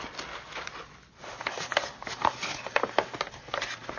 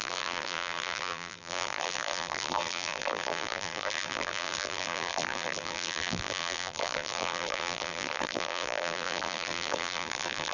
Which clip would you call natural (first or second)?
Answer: first